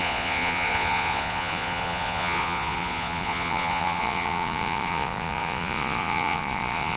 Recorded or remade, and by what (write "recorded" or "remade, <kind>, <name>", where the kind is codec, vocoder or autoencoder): remade, vocoder, Vocos